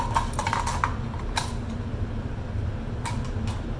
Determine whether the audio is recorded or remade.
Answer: recorded